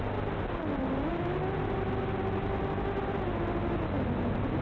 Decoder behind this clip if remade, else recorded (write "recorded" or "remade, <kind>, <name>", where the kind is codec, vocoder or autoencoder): recorded